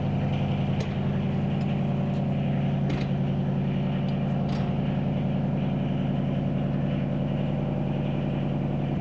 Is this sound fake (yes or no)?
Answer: no